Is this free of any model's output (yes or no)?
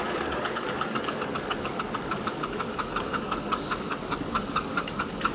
no